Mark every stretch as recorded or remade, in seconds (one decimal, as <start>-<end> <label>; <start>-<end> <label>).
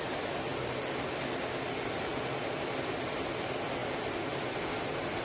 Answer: 0.0-5.2 recorded